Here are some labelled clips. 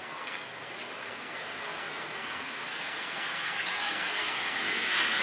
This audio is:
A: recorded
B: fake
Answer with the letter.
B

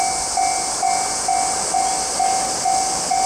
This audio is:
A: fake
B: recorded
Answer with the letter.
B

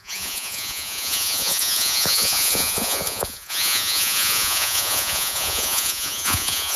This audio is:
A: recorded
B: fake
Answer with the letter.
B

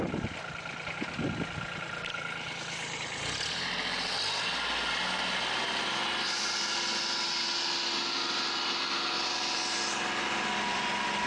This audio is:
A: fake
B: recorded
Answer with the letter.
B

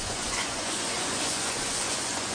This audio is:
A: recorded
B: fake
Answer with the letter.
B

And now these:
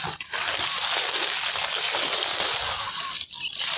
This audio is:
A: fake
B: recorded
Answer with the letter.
B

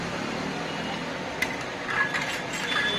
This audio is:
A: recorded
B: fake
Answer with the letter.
A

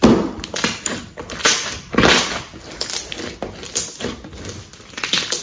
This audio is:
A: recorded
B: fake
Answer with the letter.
A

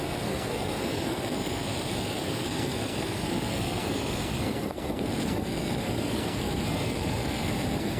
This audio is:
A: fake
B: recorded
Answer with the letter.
A